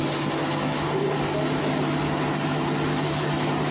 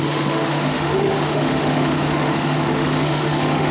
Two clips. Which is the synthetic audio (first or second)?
second